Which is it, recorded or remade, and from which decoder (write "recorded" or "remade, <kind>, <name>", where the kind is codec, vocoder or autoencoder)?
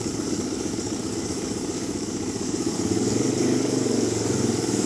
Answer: remade, codec, DAC